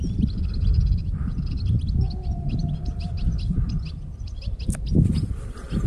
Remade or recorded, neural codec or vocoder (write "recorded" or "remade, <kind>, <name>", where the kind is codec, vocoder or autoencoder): recorded